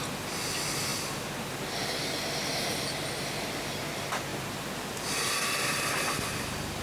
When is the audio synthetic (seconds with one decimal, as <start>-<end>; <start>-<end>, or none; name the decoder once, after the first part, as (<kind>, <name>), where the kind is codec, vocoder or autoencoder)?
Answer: none